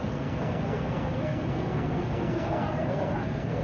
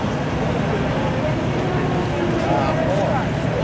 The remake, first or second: first